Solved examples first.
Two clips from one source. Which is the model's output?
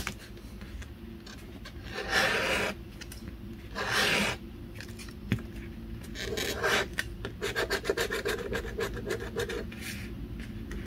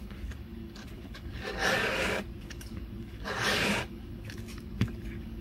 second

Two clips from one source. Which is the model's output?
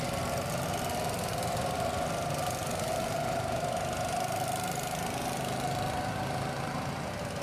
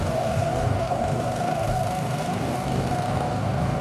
second